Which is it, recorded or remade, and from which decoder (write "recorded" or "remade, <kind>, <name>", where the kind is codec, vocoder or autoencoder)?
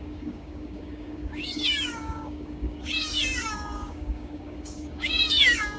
remade, codec, DAC